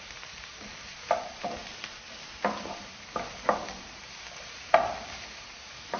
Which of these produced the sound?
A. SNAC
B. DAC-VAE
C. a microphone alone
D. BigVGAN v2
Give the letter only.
D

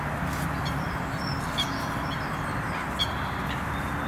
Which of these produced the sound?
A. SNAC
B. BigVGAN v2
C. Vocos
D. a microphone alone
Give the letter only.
D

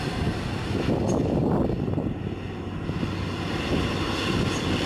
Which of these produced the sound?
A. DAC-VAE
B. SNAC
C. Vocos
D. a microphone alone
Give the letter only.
D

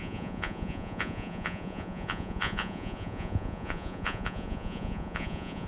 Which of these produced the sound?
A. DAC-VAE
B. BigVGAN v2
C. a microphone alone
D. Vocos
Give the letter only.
D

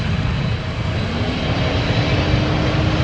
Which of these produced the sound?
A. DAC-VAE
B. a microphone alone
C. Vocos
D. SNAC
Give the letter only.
B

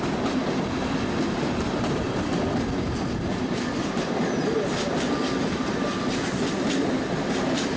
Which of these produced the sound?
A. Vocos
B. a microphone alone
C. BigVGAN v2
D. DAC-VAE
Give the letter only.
B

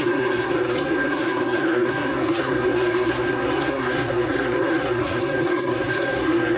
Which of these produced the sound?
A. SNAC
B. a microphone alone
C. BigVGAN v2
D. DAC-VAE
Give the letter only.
A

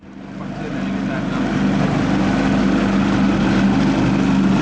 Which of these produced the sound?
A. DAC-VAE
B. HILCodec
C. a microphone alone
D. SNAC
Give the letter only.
C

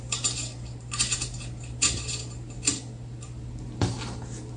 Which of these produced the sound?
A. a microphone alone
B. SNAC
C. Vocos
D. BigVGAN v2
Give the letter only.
A